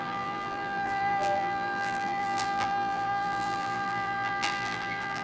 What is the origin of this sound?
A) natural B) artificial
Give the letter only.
B